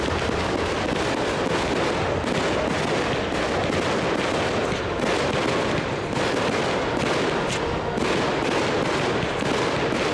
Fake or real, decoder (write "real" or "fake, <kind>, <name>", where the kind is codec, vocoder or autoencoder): real